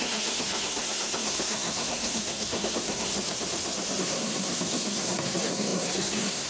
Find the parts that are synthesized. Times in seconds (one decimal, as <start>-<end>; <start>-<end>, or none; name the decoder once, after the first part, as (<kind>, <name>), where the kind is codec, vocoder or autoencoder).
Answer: 0.0-3.1 (codec, SNAC); 4.0-6.5